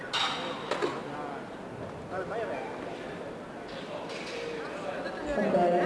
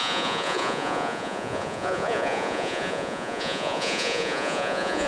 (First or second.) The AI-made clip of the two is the second